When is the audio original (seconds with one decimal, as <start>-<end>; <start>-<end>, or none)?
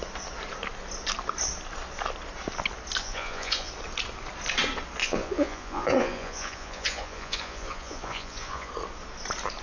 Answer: 0.0-3.0; 3.7-5.0; 8.7-9.6